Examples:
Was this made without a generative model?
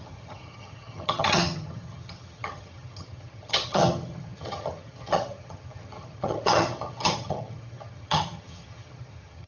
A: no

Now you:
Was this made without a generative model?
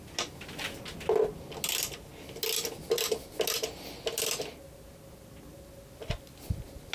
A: yes